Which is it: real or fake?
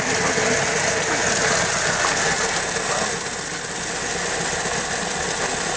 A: real